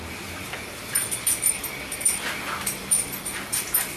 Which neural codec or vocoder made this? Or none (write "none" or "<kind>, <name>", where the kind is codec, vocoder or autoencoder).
vocoder, BigVGAN v2